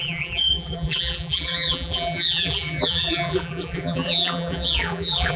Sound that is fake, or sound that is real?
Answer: fake